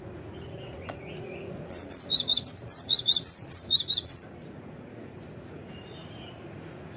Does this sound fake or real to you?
fake